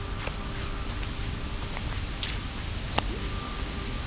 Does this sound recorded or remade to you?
recorded